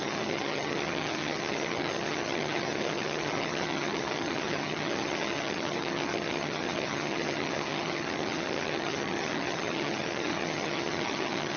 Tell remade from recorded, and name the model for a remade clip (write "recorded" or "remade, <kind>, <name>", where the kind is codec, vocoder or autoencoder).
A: remade, vocoder, HiFi-GAN